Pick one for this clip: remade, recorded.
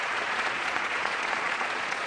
remade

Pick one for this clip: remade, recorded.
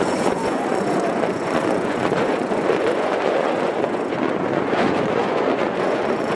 remade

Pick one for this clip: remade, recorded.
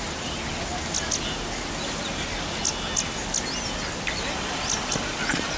recorded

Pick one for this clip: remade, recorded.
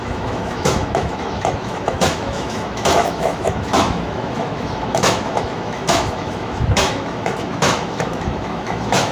remade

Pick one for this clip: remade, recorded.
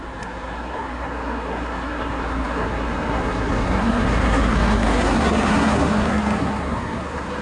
remade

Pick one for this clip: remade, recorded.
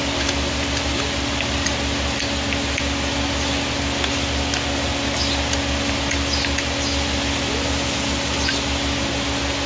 recorded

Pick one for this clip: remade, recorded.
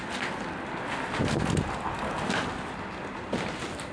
recorded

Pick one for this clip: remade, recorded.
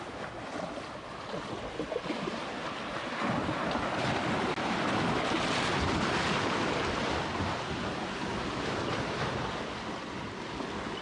recorded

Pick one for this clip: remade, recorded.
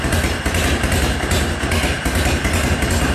recorded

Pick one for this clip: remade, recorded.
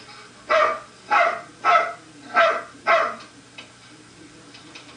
recorded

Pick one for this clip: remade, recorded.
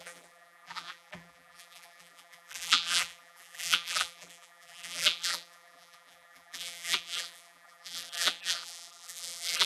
remade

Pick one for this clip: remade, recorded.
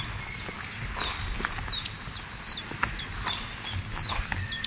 recorded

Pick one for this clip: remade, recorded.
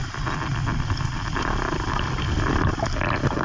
recorded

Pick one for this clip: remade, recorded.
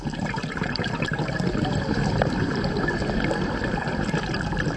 recorded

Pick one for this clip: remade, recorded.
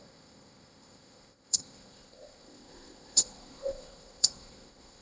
remade